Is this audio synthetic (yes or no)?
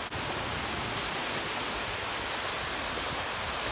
no